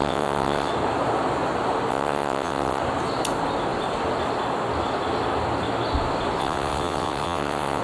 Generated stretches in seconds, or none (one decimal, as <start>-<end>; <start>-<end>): 0.0-0.7; 1.9-2.8; 6.4-7.8